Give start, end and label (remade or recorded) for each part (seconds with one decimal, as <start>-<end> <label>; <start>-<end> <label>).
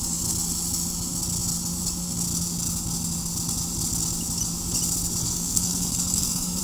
0.0-5.2 recorded; 5.2-6.6 remade